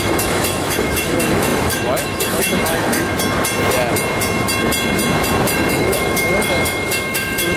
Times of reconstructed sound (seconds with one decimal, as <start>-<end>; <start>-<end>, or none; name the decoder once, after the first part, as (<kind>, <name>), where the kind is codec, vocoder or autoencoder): 0.0-3.1 (autoencoder, DAC-VAE); 5.7-7.6